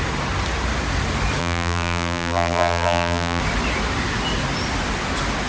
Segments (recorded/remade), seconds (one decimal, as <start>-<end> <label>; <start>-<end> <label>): 0.0-1.4 recorded; 1.4-3.4 remade; 3.4-5.5 recorded